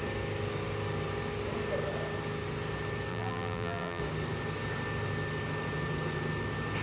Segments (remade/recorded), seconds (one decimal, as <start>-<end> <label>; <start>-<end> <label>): 0.0-3.1 recorded; 3.1-4.0 remade; 4.0-6.8 recorded